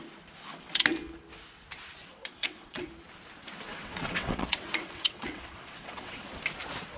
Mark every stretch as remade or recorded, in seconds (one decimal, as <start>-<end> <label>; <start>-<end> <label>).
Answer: 0.0-2.0 recorded; 2.0-2.9 remade; 2.9-3.7 recorded; 3.7-6.3 remade; 6.3-7.0 recorded

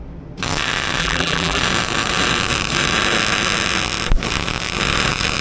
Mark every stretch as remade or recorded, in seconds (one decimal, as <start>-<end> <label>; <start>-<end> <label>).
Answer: 0.0-1.0 recorded; 1.0-1.6 remade; 1.6-5.4 recorded

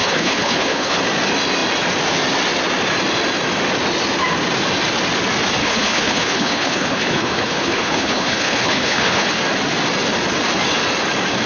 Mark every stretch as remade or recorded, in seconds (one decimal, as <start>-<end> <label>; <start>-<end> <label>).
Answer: 0.0-1.0 remade; 1.0-5.6 recorded; 5.6-9.4 remade; 9.4-11.5 recorded

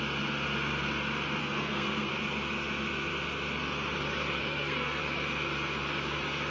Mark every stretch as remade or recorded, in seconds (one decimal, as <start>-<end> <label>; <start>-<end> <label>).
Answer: 0.0-1.4 recorded; 1.4-2.1 remade; 2.1-4.4 recorded; 4.4-5.0 remade; 5.0-6.5 recorded

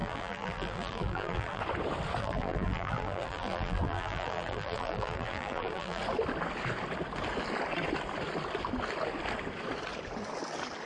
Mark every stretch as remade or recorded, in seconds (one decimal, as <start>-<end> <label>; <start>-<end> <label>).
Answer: 0.0-1.6 remade; 1.6-2.2 recorded; 2.2-6.0 remade; 6.0-10.9 recorded

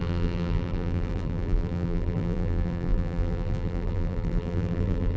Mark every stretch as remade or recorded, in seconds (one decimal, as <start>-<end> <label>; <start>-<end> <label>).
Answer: 0.0-5.2 remade

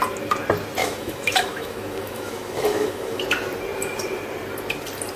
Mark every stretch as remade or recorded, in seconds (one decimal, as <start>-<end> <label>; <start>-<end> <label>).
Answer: 0.0-0.8 recorded; 0.8-3.2 remade; 3.2-5.2 recorded